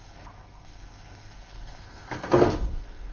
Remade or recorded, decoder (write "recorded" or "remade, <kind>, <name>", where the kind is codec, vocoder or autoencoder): remade, codec, SNAC